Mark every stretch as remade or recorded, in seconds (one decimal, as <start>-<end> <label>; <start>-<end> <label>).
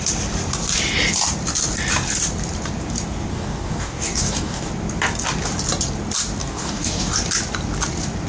0.0-3.3 recorded; 3.3-4.7 remade; 4.7-6.4 recorded; 6.4-7.1 remade; 7.1-8.3 recorded